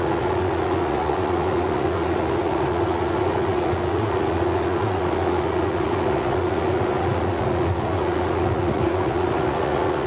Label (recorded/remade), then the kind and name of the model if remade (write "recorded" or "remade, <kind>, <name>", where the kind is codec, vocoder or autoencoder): remade, vocoder, Vocos